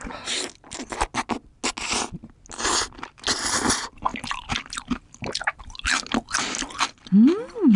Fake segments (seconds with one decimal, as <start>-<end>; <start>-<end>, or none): none